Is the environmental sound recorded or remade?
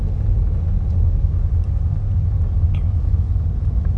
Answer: recorded